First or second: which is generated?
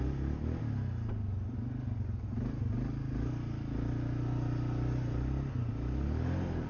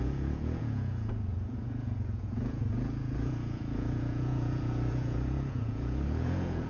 second